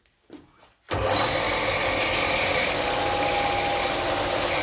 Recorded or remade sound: recorded